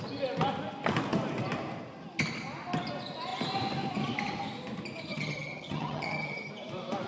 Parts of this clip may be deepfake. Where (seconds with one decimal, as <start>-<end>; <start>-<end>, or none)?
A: 5.1-6.5